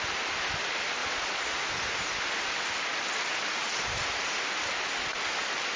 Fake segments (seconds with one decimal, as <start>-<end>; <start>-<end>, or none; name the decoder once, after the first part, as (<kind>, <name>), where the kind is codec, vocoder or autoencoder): 1.0-1.7 (vocoder, Vocos)